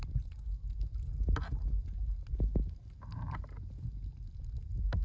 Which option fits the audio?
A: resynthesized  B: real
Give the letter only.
B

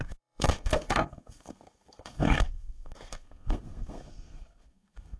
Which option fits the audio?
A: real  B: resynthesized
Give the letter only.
B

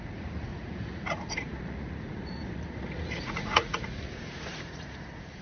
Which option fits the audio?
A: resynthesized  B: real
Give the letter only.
A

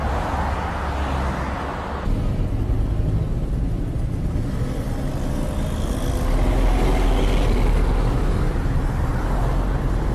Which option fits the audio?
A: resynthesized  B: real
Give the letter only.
B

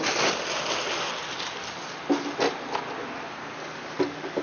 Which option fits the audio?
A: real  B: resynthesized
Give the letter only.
A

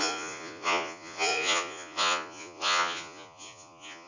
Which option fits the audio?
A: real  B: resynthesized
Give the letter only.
B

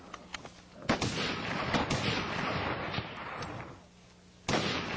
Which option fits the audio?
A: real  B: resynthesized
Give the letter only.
A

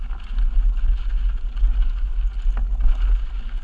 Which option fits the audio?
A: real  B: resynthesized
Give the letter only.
A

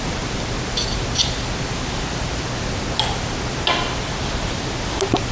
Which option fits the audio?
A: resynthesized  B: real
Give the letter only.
B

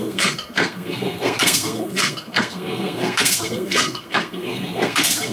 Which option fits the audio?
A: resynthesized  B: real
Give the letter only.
A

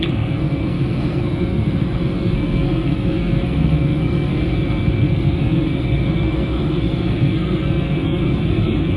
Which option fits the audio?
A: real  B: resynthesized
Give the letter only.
B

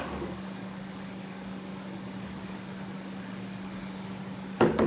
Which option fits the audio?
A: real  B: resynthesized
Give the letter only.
B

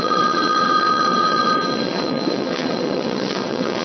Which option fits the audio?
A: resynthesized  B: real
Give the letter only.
A